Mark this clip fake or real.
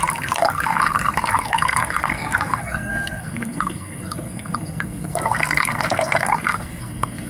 fake